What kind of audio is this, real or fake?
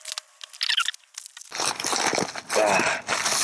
real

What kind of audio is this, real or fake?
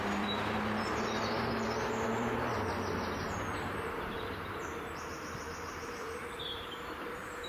fake